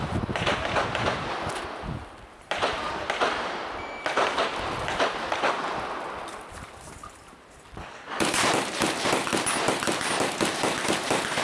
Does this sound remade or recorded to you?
remade